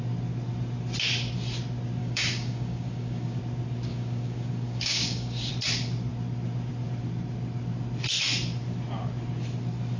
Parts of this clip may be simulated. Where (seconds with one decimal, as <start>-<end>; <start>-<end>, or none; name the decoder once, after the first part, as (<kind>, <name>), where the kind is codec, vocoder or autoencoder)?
2.0-3.4 (codec, DAC); 3.9-5.5